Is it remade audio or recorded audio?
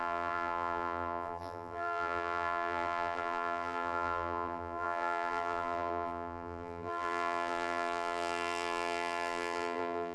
remade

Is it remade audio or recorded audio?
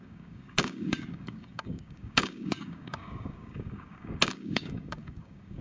remade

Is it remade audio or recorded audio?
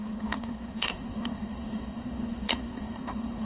remade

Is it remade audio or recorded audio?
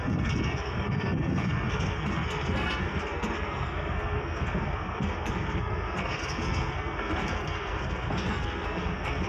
remade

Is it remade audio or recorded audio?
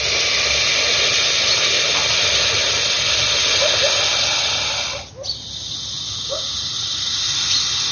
recorded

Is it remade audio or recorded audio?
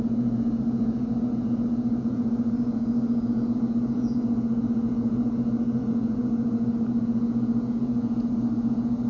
remade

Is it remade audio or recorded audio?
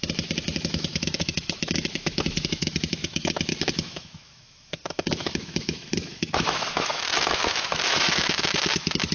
remade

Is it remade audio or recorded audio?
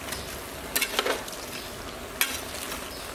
recorded